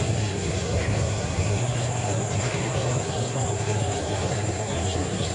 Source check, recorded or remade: remade